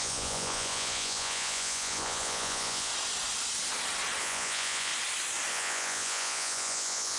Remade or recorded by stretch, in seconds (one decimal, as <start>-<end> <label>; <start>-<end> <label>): 0.0-2.9 remade; 2.9-4.2 recorded; 4.2-4.9 remade; 4.9-5.5 recorded; 5.5-7.2 remade